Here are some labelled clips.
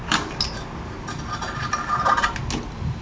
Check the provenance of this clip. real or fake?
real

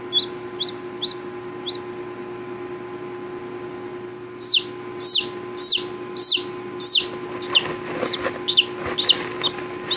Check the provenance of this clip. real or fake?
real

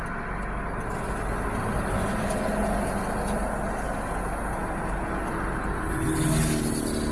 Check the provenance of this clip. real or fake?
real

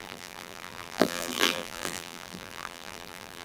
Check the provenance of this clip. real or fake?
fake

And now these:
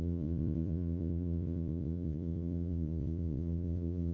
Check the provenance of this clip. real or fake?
fake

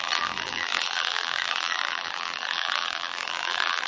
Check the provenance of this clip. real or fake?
fake